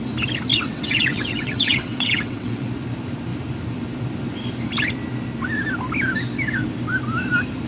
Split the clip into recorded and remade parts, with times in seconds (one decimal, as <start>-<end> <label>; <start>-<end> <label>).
0.0-0.5 recorded; 0.5-2.7 remade; 2.7-7.7 recorded